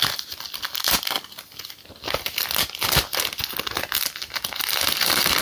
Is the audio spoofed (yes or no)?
no